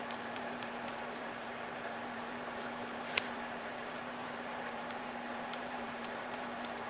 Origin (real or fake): fake